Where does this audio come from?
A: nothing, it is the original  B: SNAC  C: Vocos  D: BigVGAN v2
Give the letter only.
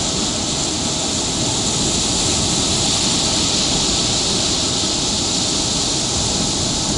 A